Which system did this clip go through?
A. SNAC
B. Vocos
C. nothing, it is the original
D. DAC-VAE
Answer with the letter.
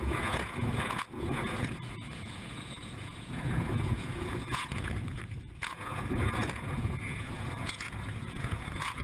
B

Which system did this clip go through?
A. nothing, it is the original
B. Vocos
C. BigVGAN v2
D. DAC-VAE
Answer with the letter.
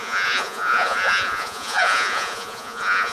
B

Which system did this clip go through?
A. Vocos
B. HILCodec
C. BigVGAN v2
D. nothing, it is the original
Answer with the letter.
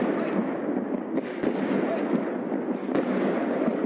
D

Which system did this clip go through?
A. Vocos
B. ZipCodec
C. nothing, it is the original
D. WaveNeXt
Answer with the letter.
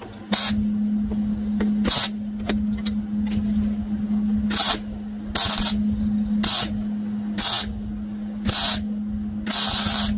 C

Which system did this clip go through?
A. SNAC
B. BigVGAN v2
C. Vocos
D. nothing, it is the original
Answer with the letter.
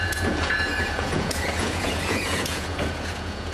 C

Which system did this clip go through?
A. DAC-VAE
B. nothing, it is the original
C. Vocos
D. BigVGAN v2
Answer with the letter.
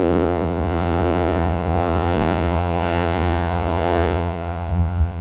C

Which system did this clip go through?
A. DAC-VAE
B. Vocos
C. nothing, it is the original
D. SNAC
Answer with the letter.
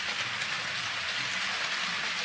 C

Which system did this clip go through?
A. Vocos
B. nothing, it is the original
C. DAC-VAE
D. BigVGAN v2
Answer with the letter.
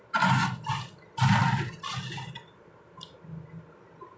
B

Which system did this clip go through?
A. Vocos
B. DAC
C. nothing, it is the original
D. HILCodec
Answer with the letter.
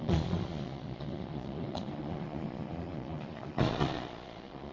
A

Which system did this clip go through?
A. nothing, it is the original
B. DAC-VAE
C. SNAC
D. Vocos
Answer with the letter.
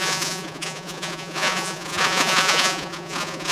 D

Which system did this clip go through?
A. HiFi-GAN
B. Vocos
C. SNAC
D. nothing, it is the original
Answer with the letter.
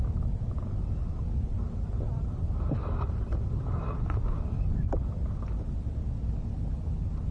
D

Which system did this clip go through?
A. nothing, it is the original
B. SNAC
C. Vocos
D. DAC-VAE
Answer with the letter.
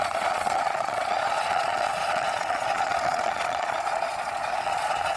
C